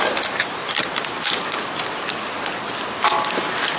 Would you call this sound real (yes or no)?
yes